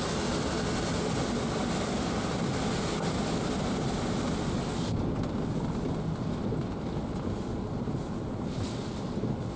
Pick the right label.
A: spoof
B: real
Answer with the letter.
B